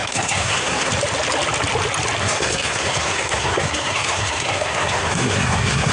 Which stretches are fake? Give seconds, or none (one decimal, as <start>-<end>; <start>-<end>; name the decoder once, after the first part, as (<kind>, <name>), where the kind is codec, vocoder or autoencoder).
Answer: 0.0-0.9 (codec, SNAC); 2.2-5.9